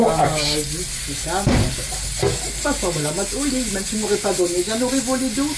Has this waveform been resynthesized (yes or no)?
no